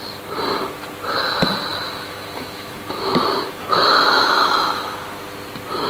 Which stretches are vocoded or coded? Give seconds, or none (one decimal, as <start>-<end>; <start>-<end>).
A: 1.7-5.0